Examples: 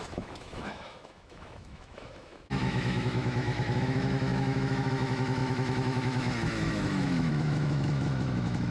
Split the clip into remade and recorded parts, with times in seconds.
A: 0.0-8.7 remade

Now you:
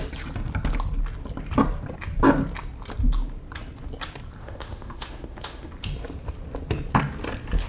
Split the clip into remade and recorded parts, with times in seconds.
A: 0.0-4.4 recorded; 4.4-5.7 remade; 5.7-7.7 recorded

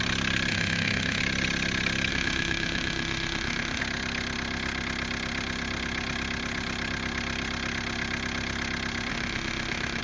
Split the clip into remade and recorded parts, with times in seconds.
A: 0.0-0.5 recorded; 0.5-1.2 remade; 1.2-2.1 recorded; 2.1-3.8 remade; 3.8-9.1 recorded; 9.1-10.0 remade

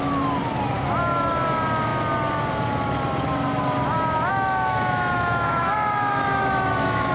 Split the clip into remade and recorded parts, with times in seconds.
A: 0.0-4.3 recorded; 4.3-7.1 remade

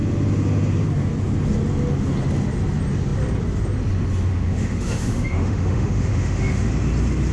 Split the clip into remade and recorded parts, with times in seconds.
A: 0.0-4.3 recorded; 4.3-6.7 remade; 6.7-7.3 recorded

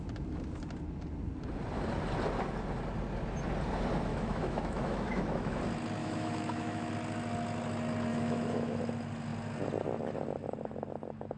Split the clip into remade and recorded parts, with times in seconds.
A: 0.0-4.1 recorded; 4.1-5.6 remade; 5.6-6.0 recorded; 6.0-6.9 remade; 6.9-8.1 recorded; 8.1-8.8 remade; 8.8-11.4 recorded